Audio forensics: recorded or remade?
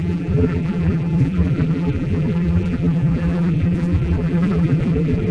remade